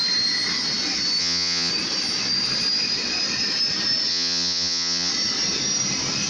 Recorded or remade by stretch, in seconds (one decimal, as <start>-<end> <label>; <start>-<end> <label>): 0.0-1.2 recorded; 1.2-1.7 remade; 1.7-4.1 recorded; 4.1-5.1 remade; 5.1-6.3 recorded